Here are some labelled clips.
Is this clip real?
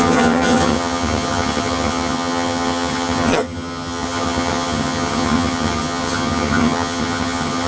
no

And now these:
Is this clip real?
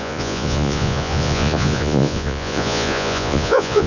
no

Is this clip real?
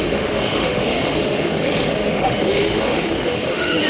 no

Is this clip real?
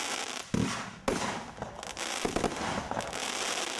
yes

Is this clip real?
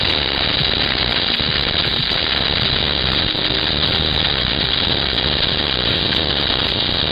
yes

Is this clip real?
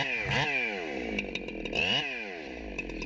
yes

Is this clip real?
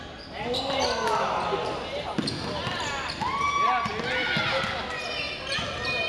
yes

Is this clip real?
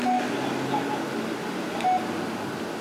yes